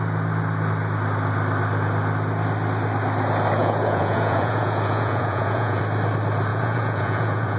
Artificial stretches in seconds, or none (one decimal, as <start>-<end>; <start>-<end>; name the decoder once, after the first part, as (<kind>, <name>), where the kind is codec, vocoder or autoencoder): 3.6-5.8 (vocoder, Vocos); 6.5-7.6